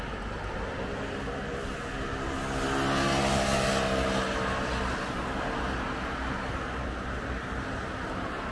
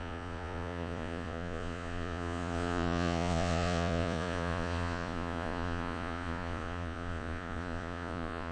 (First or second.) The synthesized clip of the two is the second